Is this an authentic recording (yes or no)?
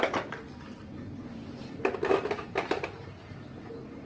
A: yes